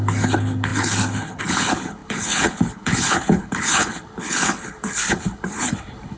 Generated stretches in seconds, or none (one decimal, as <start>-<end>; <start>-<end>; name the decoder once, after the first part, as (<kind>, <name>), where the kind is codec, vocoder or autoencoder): 0.0-6.2 (codec, HILCodec)